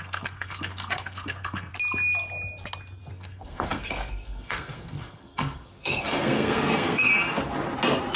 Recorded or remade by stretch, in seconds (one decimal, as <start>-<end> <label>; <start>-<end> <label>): 0.0-1.7 remade; 1.7-3.1 recorded; 3.1-7.1 remade; 7.1-8.2 recorded